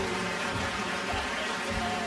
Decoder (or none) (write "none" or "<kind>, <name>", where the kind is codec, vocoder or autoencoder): none